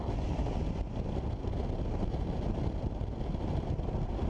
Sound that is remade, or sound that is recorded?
recorded